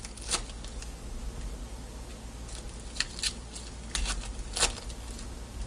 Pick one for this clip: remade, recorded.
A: recorded